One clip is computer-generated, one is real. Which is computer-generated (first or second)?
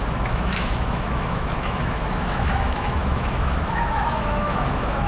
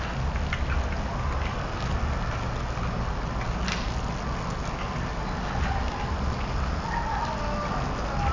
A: first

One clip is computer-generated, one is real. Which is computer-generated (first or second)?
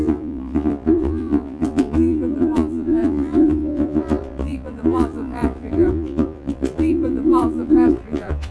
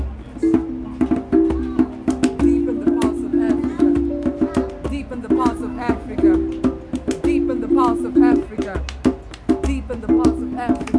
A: first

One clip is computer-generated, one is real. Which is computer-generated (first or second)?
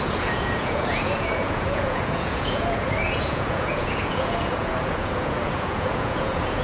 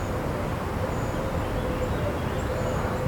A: first